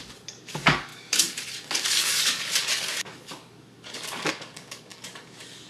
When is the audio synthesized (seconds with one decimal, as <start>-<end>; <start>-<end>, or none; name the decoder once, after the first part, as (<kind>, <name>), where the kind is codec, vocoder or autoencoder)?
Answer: 0.0-5.7 (codec, DAC)